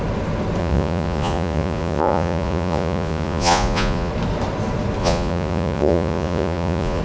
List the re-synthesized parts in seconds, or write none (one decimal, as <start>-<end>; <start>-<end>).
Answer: 0.6-4.1; 5.0-7.0

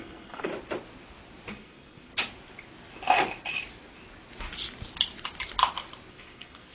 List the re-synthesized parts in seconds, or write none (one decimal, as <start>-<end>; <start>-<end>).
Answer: 0.0-0.5; 1.5-2.1; 6.1-6.7

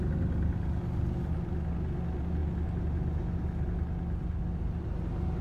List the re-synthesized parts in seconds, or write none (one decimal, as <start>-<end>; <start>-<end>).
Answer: none

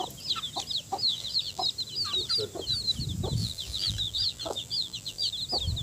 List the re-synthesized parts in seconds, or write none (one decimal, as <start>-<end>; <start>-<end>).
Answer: 1.1-1.6; 3.4-5.3

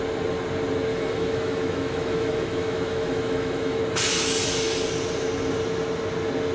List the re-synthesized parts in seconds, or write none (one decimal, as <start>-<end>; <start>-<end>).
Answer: 0.9-3.8

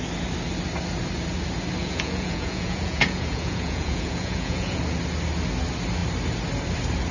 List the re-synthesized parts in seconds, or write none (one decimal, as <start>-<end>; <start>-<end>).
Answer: 1.8-4.8